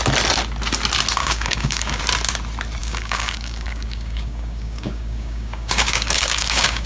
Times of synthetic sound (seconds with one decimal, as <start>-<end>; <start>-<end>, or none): 1.2-2.0; 2.8-6.9